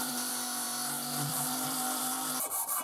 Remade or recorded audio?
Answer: remade